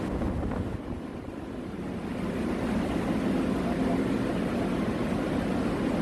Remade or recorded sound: recorded